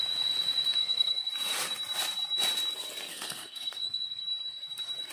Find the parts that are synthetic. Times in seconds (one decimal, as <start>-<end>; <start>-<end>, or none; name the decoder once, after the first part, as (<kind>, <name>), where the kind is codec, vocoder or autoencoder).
0.8-1.3 (codec, SNAC); 3.1-4.2